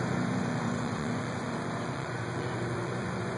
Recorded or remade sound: remade